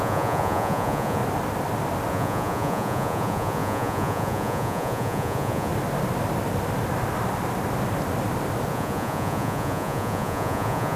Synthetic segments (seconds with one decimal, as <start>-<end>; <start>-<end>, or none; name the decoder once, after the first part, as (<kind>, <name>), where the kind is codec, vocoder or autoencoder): 0.0-1.2 (vocoder, Vocos); 2.1-5.7; 8.7-11.0